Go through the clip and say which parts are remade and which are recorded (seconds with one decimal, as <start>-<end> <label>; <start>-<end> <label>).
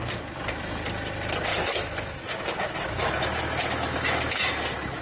0.0-1.5 recorded; 1.5-4.5 remade; 4.5-5.0 recorded